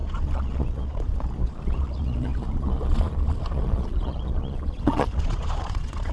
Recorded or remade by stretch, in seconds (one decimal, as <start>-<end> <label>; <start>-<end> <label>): 0.0-6.1 remade